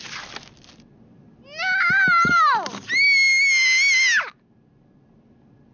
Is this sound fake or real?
real